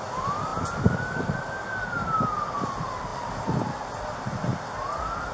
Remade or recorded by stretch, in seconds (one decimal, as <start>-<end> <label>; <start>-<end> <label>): 0.0-5.3 recorded